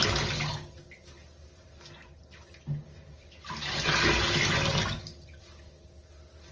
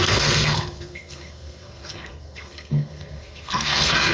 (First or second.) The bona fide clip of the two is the first